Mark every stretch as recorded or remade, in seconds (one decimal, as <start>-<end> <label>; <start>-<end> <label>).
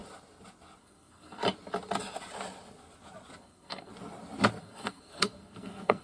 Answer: 0.0-0.8 recorded; 0.8-1.4 remade; 1.4-3.4 recorded; 3.4-3.9 remade; 3.9-4.6 recorded; 4.6-6.0 remade